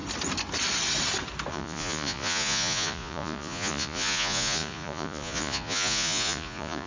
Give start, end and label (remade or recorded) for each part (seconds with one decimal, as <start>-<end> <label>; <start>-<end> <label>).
0.0-1.5 recorded; 1.5-6.9 remade